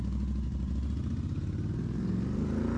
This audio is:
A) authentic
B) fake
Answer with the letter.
A